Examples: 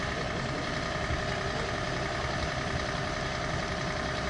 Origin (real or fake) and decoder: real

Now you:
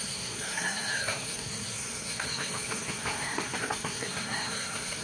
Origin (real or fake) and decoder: fake, codec, SNAC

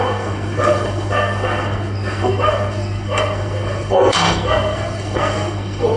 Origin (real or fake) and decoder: fake, codec, SNAC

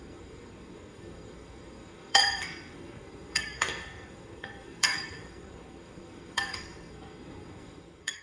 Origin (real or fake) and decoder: fake, codec, SNAC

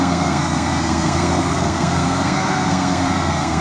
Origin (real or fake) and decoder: fake, codec, SNAC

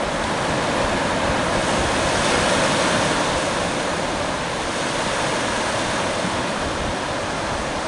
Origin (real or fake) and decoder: real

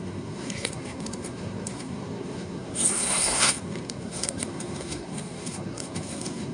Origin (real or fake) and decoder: fake, codec, SNAC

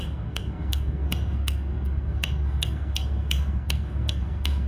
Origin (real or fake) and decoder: fake, codec, SNAC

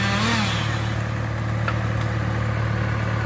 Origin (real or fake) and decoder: real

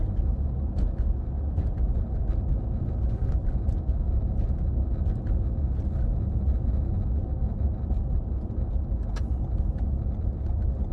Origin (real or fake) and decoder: real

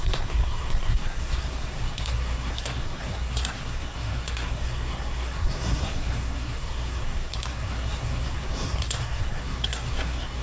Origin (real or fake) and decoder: fake, codec, SNAC